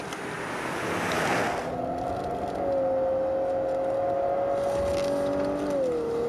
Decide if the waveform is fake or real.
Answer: real